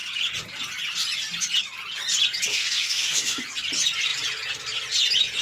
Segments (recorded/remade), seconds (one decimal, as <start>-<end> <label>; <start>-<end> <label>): 0.0-2.5 recorded; 2.5-3.4 remade; 3.4-5.4 recorded